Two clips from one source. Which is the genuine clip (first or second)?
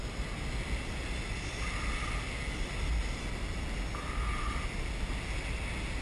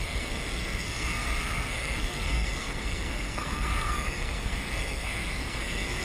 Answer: first